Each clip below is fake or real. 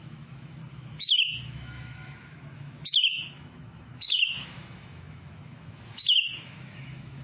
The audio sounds fake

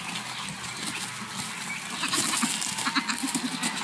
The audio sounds real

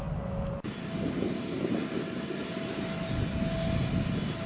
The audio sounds real